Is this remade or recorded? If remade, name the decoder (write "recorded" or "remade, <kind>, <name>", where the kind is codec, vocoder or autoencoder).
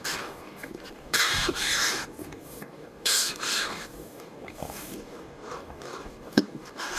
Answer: remade, codec, DAC